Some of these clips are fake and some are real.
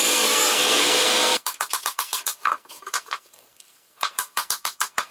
fake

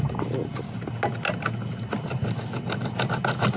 real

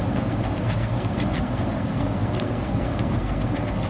fake